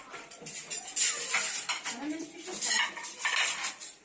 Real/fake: real